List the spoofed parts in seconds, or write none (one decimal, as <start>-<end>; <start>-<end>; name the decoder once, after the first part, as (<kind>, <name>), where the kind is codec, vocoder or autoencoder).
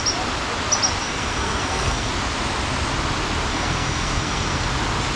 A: 1.0-2.1 (codec, SNAC); 3.5-4.7